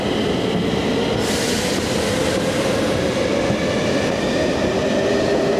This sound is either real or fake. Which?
real